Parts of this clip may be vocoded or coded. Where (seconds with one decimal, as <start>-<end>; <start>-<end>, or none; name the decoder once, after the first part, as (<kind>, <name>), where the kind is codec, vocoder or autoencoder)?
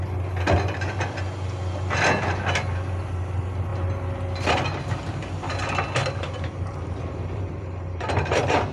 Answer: 6.0-8.1 (vocoder, BigVGAN v2)